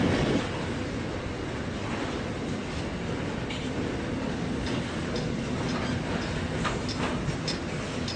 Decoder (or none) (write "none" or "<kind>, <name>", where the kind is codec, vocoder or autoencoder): none